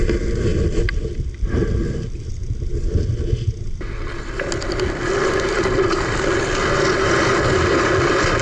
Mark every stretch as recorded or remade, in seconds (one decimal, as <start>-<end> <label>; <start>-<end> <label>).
0.0-2.7 remade; 2.7-7.3 recorded; 7.3-8.4 remade